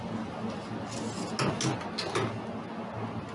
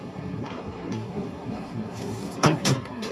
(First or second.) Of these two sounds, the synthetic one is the second